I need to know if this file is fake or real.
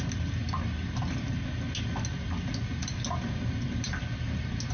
real